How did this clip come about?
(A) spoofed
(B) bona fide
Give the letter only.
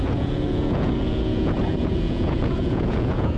A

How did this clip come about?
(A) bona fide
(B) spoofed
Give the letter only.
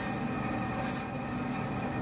A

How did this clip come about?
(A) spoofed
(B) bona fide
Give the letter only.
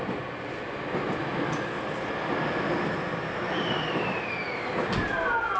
B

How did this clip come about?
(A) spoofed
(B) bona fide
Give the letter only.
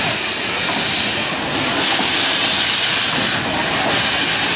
B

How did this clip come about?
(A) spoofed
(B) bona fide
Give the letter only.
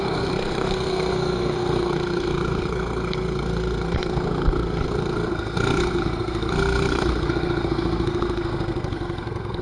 A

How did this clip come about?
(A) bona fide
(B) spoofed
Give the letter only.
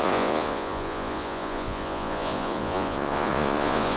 B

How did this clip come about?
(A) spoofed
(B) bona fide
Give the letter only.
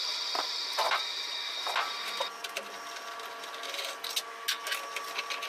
B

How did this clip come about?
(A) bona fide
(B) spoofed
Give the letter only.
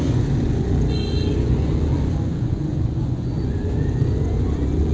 B